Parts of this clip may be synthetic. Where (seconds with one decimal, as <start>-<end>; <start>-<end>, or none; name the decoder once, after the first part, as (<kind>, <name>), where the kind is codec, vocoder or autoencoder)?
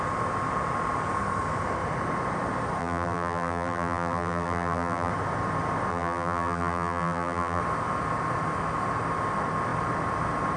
2.8-5.1 (vocoder, BigVGAN v2); 5.9-7.6